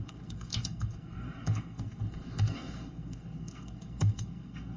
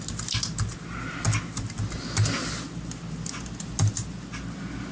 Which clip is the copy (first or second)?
first